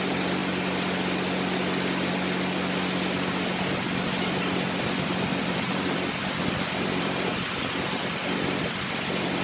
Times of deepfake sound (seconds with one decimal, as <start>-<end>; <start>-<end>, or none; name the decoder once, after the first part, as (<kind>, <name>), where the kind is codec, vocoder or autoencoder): 0.0-0.4 (vocoder, BigVGAN v2); 5.4-7.3; 8.0-9.4